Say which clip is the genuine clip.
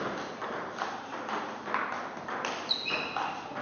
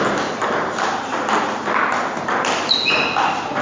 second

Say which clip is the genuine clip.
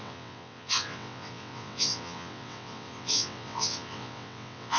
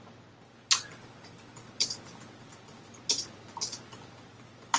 second